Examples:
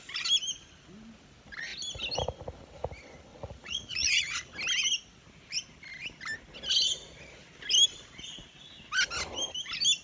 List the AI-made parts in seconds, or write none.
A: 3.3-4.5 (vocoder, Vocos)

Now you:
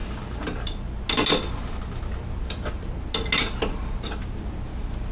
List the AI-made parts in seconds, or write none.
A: none